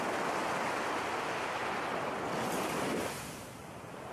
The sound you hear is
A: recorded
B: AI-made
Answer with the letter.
A